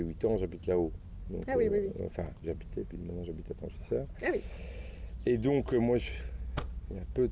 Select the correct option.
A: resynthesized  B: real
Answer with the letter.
B